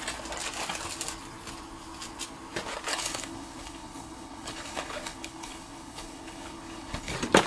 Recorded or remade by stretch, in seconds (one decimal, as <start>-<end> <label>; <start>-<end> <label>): 0.0-2.9 recorded; 2.9-7.1 remade; 7.1-7.5 recorded